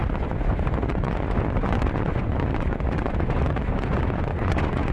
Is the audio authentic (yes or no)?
no